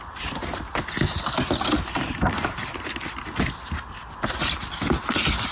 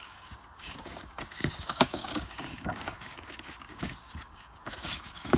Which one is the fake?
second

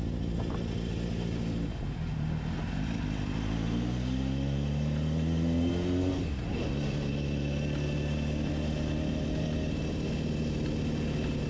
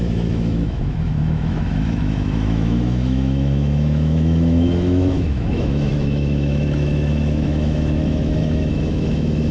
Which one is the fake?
second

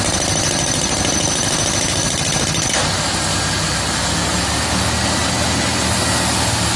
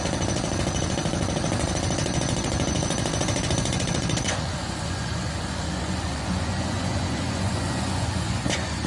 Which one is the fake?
second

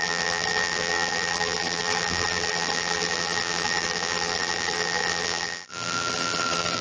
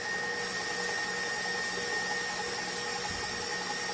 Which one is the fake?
first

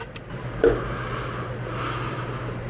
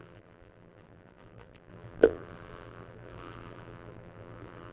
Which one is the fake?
second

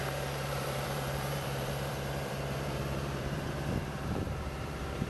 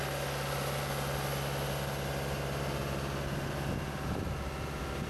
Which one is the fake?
first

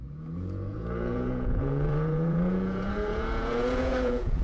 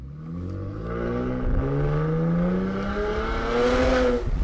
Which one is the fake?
first